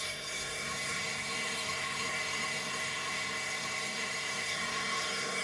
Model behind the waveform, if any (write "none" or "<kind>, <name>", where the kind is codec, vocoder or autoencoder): codec, SNAC